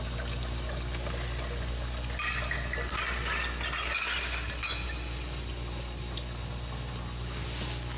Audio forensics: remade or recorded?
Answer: recorded